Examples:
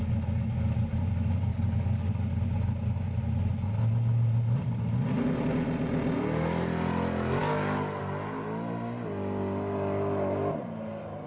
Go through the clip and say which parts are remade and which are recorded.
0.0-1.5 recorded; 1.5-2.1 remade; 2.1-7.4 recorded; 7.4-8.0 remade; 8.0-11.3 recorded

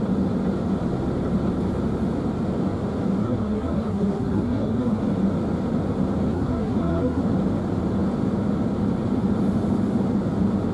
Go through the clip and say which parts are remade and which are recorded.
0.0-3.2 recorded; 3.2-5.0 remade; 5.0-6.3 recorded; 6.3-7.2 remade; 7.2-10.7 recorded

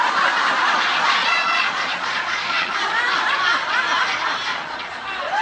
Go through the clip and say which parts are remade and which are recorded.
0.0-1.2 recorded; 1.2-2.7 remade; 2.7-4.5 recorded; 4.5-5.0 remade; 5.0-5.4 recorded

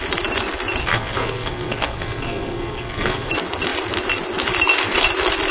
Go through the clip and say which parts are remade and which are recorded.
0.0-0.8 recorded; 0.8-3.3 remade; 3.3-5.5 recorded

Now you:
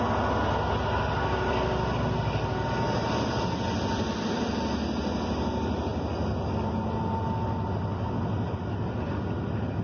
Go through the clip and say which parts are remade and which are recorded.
0.0-9.8 recorded

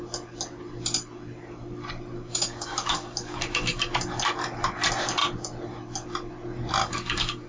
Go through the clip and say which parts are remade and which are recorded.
0.0-2.3 recorded; 2.3-3.9 remade; 3.9-6.8 recorded; 6.8-7.5 remade

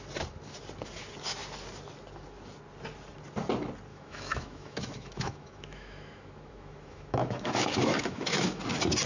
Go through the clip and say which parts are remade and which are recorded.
0.0-3.9 recorded; 3.9-8.6 remade; 8.6-9.1 recorded